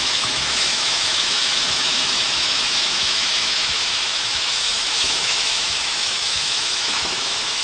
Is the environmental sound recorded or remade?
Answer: remade